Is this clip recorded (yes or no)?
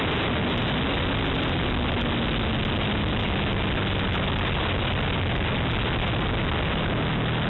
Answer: yes